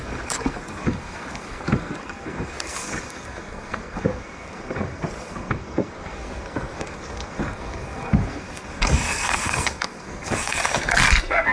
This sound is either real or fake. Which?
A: fake